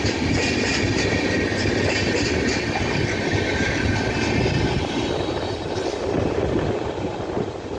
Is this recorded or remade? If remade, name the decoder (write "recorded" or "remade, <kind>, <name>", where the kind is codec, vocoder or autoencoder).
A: remade, vocoder, BigVGAN v2